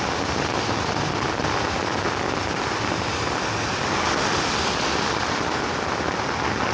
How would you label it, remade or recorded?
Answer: recorded